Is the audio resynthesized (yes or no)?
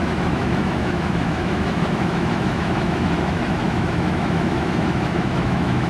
yes